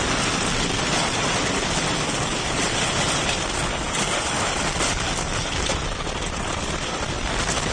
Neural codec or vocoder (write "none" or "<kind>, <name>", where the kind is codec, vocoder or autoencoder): none